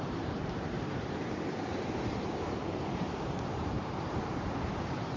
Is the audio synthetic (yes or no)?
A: yes